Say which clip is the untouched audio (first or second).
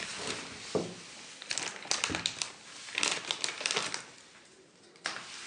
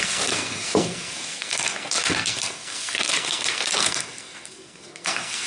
first